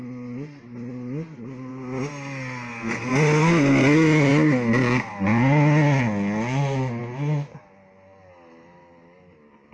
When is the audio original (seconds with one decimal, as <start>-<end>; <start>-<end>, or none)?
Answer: 0.0-9.7